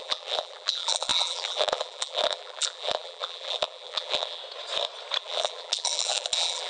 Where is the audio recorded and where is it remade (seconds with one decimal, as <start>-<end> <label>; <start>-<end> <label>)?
0.0-4.4 remade; 4.4-5.2 recorded; 5.2-6.7 remade